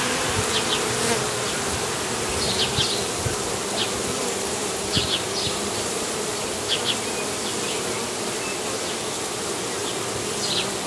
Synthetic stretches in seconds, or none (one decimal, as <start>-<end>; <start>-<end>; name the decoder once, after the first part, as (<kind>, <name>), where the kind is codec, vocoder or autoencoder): 4.6-8.4 (vocoder, BigVGAN v2)